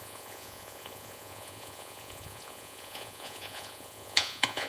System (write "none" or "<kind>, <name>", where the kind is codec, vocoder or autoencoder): vocoder, Vocos